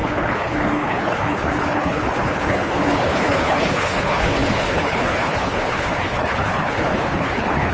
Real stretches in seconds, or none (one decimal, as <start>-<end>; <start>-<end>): none